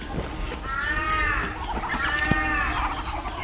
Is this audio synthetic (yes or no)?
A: no